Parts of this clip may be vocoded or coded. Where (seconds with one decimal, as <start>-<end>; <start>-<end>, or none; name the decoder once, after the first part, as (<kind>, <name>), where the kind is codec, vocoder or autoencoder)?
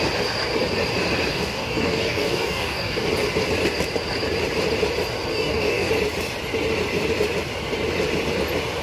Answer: 1.3-3.1 (codec, DAC); 5.3-5.9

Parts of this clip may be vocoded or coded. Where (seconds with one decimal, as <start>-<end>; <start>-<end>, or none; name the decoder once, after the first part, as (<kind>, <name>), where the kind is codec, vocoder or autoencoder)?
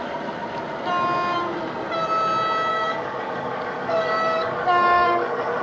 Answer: 2.7-5.6 (codec, DAC)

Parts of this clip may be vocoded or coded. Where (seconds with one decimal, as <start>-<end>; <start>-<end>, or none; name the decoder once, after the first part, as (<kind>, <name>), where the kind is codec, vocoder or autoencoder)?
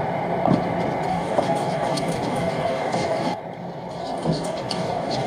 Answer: 1.1-3.4 (codec, DAC); 4.0-5.3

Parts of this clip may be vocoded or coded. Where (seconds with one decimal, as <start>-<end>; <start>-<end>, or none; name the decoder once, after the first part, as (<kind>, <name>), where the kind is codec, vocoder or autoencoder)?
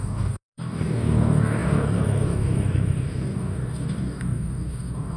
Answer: 0.0-5.2 (codec, DAC)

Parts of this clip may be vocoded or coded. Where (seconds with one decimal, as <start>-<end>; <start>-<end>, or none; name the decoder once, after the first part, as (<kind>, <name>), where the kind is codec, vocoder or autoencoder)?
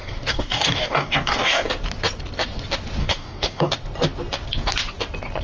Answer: 0.0-1.7 (codec, DAC); 3.0-3.7